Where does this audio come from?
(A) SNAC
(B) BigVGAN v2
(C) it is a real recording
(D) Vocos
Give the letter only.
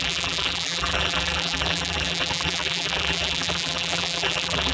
B